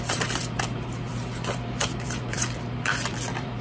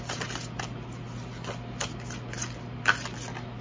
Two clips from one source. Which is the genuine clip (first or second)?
second